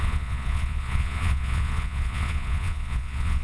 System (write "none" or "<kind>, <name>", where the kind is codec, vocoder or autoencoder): vocoder, Vocos